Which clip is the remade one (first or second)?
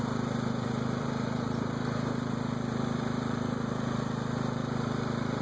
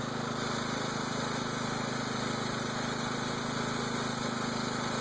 first